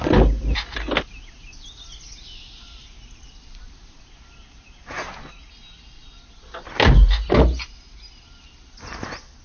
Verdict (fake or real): real